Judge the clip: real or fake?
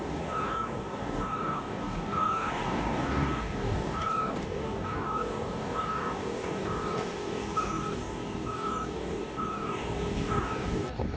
fake